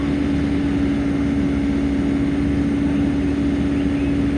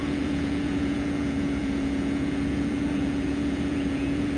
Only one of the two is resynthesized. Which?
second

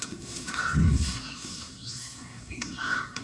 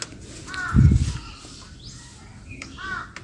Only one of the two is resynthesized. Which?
first